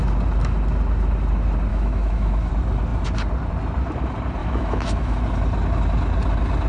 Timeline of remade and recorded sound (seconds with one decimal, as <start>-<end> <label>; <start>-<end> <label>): 0.0-1.7 recorded; 1.7-2.5 remade; 2.5-4.4 recorded; 4.4-5.2 remade; 5.2-6.7 recorded